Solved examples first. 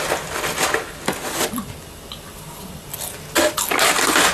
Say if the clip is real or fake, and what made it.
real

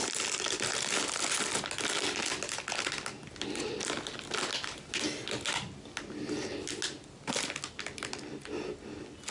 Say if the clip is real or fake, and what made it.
real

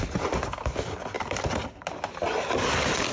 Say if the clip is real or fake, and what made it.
real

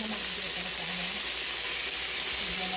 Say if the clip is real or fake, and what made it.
real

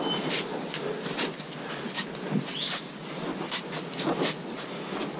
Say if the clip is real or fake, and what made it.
real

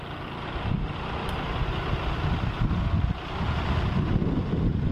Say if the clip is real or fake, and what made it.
real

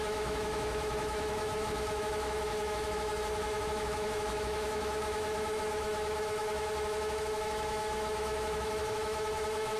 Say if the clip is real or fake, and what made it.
fake, autoencoder, DAC-VAE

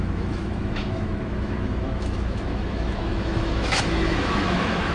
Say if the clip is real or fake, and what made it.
fake, autoencoder, DAC-VAE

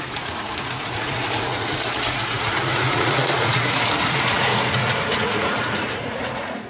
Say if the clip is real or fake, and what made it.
fake, vocoder, Vocos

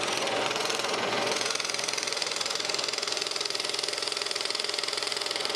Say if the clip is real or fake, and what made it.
fake, vocoder, Vocos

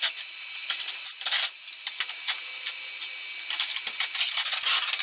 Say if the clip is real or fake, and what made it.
real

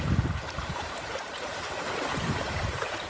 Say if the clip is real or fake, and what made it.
fake, vocoder, BigVGAN v2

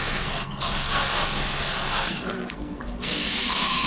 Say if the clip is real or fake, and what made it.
fake, codec, SNAC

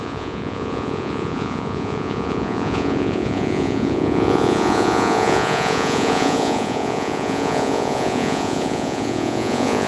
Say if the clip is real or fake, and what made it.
fake, vocoder, Vocos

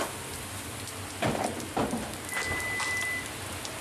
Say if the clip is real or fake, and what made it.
real